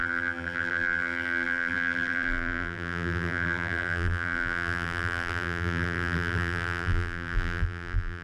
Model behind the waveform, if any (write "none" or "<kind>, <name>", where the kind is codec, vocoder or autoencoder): vocoder, BigVGAN v2